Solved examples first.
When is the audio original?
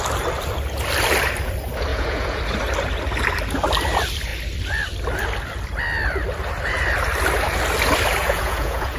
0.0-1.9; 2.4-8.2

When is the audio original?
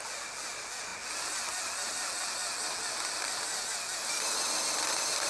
0.0-5.3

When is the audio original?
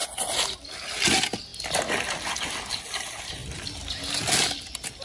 0.0-5.0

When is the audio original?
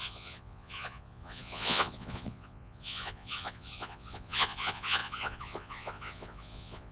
none